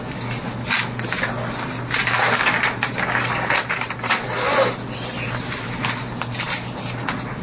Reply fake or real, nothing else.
real